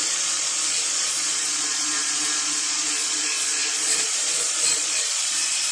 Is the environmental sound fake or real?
fake